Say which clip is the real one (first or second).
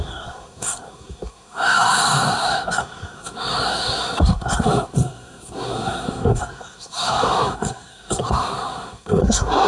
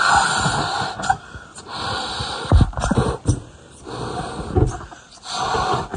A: second